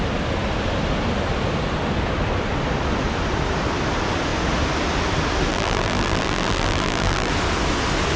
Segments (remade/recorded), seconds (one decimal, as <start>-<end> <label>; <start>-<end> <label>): 0.0-5.5 recorded; 5.5-7.3 remade; 7.3-8.2 recorded

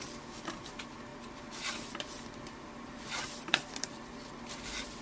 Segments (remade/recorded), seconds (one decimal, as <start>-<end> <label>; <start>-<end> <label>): 0.0-1.1 recorded; 1.1-4.1 remade; 4.1-5.0 recorded

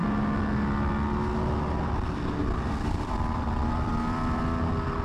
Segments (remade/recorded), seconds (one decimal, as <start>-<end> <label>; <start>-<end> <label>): 0.0-0.9 remade; 0.9-2.4 recorded; 2.4-4.4 remade; 4.4-5.0 recorded

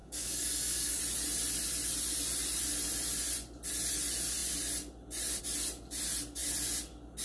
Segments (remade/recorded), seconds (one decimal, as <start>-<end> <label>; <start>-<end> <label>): 0.0-1.0 remade; 1.0-7.2 recorded